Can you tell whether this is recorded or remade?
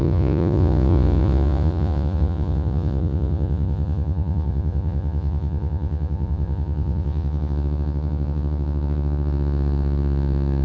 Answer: remade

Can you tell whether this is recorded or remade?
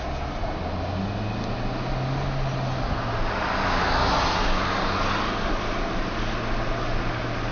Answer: recorded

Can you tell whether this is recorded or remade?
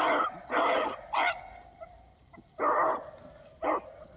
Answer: recorded